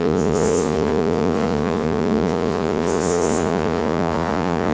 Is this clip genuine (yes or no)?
no